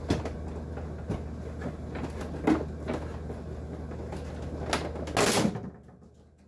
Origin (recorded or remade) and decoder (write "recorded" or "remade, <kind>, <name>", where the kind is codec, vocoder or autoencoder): recorded